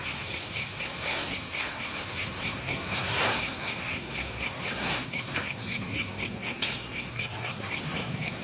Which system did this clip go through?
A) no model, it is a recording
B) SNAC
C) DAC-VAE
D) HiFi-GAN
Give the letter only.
B